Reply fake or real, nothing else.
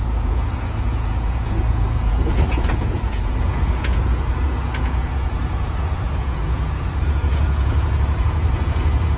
fake